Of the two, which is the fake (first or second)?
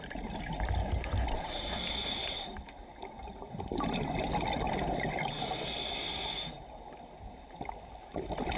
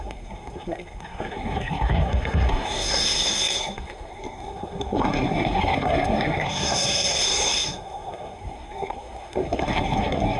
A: second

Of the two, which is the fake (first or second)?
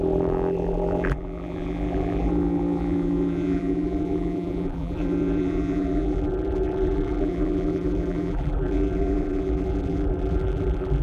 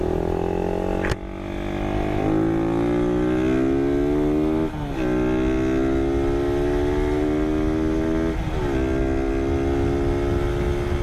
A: first